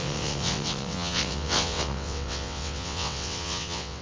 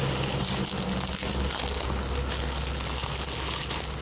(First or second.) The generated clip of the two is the first